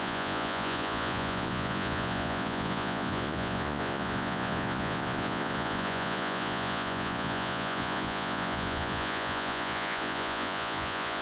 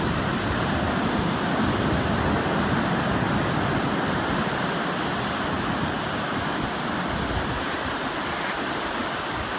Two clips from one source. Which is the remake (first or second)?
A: first